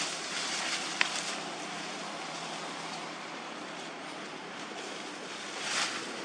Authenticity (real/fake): real